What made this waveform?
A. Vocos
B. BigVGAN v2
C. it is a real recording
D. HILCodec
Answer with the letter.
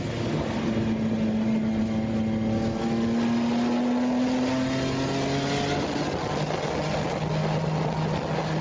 C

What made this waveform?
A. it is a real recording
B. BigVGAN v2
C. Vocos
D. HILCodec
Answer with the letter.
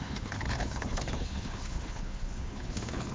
D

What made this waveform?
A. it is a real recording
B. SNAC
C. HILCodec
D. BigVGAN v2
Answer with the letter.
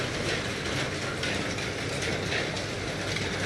A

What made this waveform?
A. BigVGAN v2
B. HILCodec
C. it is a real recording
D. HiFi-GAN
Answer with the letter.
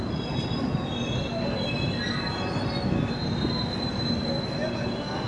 C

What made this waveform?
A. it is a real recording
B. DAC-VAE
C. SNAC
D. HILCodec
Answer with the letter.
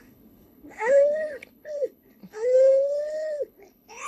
D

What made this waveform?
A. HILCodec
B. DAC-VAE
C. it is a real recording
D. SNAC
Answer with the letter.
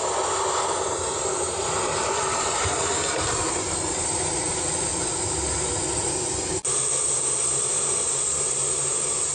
C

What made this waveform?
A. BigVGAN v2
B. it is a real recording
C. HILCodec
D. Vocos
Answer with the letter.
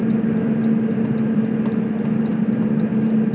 B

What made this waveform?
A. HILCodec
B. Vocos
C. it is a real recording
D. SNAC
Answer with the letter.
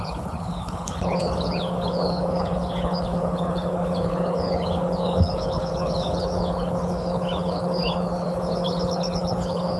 A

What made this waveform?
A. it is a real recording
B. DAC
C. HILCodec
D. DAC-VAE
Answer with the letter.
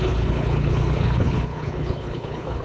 C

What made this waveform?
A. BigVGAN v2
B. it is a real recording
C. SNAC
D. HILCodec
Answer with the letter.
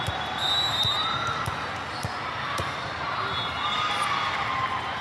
B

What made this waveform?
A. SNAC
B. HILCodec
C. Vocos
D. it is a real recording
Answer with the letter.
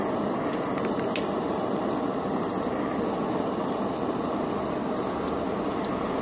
D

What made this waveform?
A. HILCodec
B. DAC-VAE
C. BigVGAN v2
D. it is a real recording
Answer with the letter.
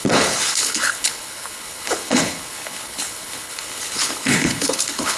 A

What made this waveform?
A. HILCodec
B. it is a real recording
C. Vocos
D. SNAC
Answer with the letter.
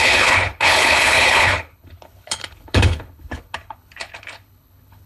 A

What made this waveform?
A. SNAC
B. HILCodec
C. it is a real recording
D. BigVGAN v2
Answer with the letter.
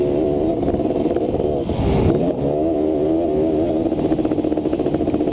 C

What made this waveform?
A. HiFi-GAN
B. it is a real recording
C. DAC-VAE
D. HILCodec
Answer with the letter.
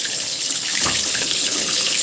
D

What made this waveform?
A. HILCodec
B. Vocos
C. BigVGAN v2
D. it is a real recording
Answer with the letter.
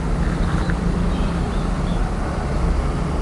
D